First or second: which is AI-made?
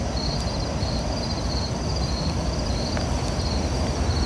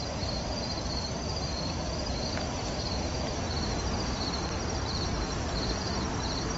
second